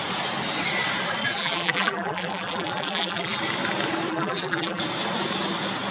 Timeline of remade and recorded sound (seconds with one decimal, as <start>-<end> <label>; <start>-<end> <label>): 0.0-1.2 recorded; 1.2-3.4 remade; 3.4-4.1 recorded; 4.1-4.8 remade; 4.8-5.9 recorded